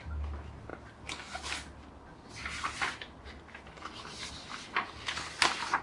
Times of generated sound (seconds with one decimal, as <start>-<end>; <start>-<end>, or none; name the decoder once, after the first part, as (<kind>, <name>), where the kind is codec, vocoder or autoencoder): none